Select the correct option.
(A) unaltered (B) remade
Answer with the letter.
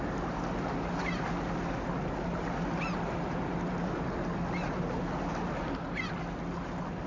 A